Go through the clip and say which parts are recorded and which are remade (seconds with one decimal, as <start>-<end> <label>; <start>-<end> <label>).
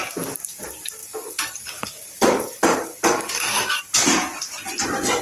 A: 0.0-1.0 recorded; 1.0-3.8 remade; 3.8-5.2 recorded